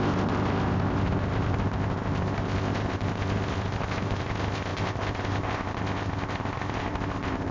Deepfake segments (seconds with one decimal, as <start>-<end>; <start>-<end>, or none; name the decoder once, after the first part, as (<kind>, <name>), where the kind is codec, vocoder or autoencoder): 0.0-7.5 (codec, ZipCodec)